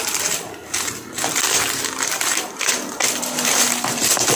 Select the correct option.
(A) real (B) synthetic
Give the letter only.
B